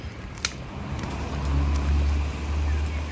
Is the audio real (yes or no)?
yes